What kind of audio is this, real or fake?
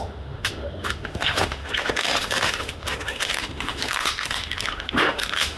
fake